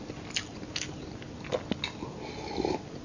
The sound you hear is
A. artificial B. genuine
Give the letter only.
B